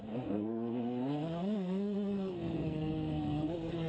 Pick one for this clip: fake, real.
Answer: fake